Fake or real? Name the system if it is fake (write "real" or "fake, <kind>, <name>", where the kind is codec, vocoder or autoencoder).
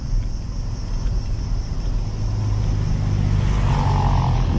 real